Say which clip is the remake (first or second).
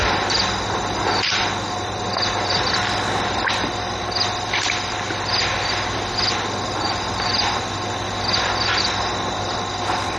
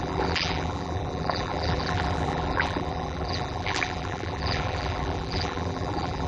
second